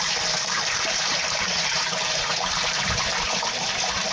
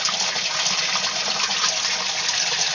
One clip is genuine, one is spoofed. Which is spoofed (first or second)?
first